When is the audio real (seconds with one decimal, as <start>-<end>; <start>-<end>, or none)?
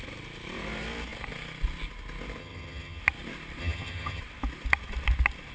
0.0-2.4; 3.0-3.6; 4.2-5.5